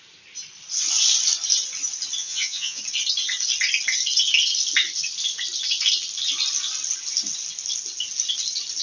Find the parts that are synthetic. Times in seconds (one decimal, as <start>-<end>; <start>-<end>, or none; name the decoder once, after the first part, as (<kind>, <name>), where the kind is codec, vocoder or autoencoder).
2.2-2.8 (vocoder, Vocos)